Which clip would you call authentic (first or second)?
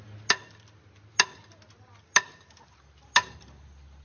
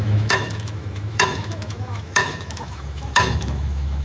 first